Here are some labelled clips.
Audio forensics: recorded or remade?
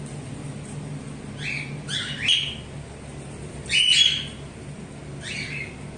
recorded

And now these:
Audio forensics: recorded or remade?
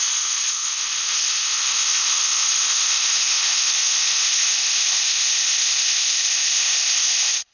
remade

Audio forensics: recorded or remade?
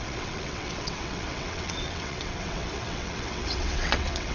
remade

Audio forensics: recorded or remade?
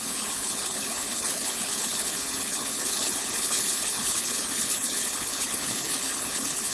remade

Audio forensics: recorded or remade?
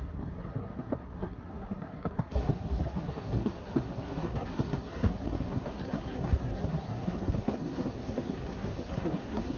remade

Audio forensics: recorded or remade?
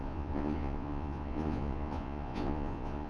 remade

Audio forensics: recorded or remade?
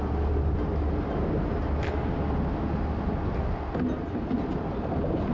recorded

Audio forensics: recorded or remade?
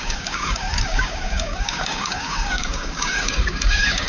remade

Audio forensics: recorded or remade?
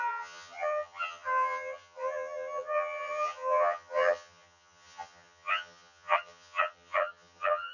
remade